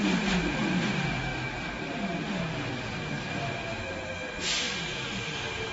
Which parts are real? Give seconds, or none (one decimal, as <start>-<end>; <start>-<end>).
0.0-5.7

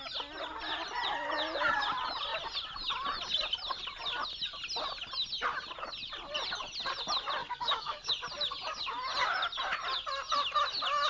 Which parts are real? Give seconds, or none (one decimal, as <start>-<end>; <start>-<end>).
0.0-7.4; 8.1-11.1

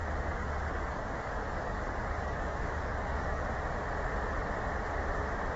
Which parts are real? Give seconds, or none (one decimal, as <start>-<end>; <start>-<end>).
3.4-5.6